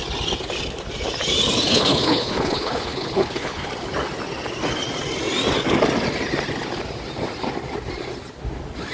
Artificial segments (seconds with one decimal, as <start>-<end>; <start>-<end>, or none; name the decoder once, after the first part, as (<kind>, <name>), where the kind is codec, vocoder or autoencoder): 1.7-3.7 (codec, HILCodec)